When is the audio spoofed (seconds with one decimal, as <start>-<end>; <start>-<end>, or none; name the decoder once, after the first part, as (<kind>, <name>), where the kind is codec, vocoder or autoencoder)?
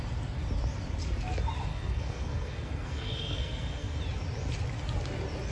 1.7-4.0 (codec, SNAC)